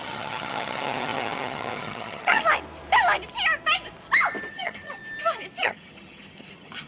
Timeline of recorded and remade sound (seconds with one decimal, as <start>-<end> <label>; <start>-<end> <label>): 0.0-2.4 remade; 2.4-4.5 recorded; 4.5-5.0 remade; 5.0-5.6 recorded; 5.6-6.9 remade